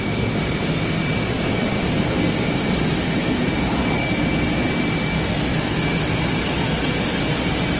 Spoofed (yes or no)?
no